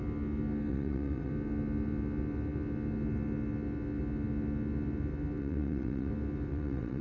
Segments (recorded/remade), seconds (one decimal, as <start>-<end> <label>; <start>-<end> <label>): 0.0-0.7 recorded; 0.7-1.3 remade; 1.3-5.4 recorded; 5.4-6.1 remade; 6.1-6.5 recorded; 6.5-7.0 remade